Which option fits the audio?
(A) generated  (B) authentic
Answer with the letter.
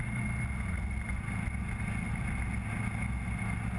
B